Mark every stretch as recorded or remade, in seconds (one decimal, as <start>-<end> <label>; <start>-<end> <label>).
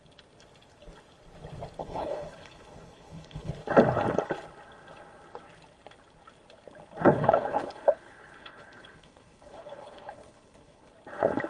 0.0-1.8 recorded; 1.8-3.5 remade; 3.5-7.0 recorded; 7.0-10.9 remade; 10.9-11.5 recorded